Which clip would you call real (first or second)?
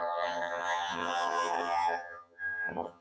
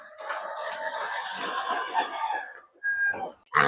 second